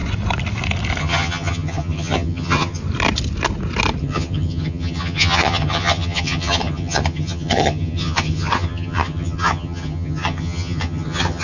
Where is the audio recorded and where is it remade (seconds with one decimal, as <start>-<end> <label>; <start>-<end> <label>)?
0.0-1.0 recorded; 1.0-2.8 remade; 2.8-4.0 recorded; 4.0-11.4 remade